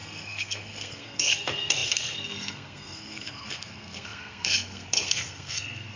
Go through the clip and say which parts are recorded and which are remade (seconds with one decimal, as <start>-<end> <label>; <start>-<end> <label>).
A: 0.0-6.0 remade